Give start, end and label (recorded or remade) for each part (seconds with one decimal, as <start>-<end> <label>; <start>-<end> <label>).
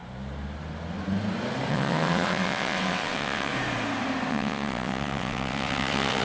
0.0-1.7 recorded; 1.7-3.5 remade; 3.5-4.3 recorded; 4.3-6.2 remade